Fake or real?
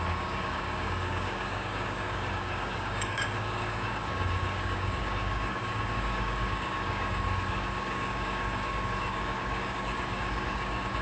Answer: fake